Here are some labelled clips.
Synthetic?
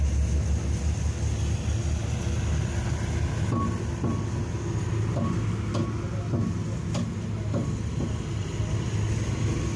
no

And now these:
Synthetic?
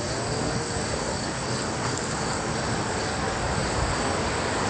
yes